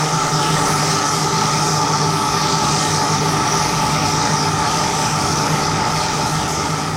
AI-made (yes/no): yes